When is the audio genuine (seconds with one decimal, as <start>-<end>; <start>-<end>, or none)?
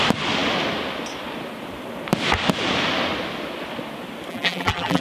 0.0-4.3